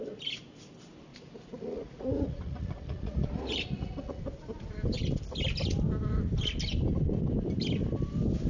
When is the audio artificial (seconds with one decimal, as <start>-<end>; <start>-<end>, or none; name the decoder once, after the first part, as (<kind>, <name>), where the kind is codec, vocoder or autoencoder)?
1.1-4.2 (vocoder, Vocos)